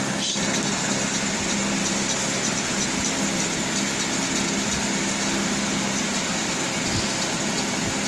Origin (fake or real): real